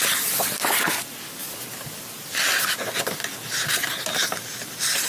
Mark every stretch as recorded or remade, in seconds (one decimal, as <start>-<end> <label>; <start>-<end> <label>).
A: 0.0-5.1 recorded